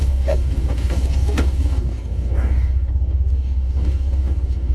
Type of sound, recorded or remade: remade